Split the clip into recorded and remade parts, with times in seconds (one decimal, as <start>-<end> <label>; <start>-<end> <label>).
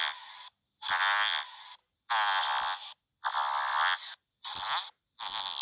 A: 0.0-5.6 recorded